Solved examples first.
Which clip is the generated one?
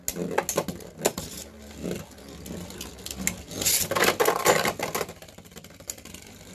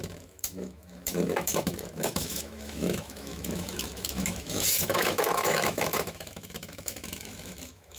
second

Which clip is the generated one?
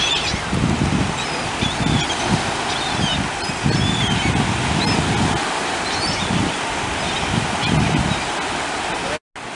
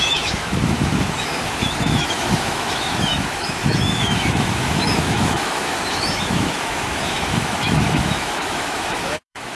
second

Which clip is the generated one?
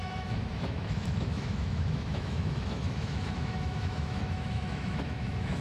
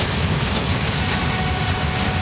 first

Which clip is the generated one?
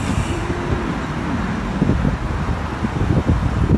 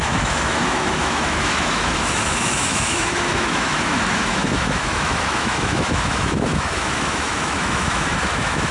second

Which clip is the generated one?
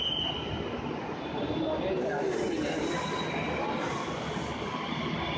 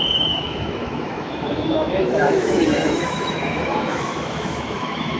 second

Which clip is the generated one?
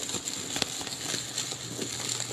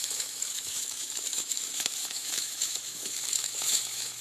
second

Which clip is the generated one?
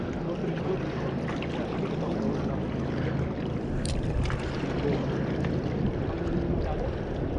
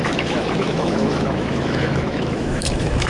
second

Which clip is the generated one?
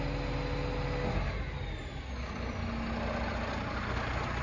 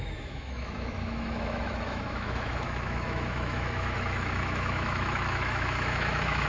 second